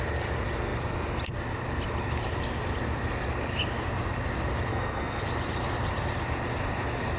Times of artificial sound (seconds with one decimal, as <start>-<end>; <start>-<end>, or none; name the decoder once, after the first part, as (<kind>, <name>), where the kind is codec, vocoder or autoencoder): 4.7-5.2 (codec, SNAC)